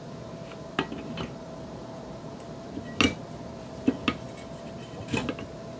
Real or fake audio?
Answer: real